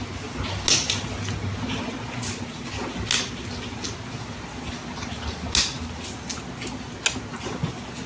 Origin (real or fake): real